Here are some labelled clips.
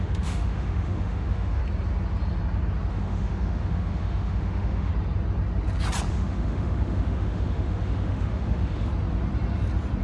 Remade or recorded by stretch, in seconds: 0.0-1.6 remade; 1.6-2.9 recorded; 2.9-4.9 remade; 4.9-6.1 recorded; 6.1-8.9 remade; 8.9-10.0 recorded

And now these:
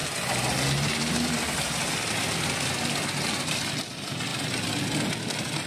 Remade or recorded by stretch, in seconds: 0.0-5.7 recorded

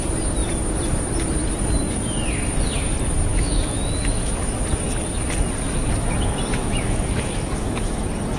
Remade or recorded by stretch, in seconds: 0.0-3.3 recorded; 3.3-4.6 remade; 4.6-6.5 recorded; 6.5-7.9 remade; 7.9-8.4 recorded

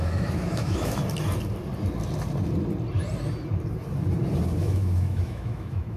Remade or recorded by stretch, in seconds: 0.0-1.0 remade; 1.0-4.6 recorded; 4.6-6.0 remade